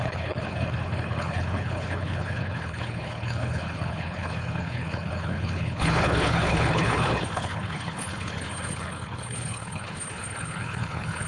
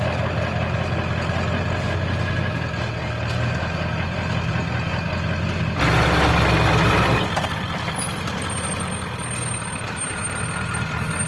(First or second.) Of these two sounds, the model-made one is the first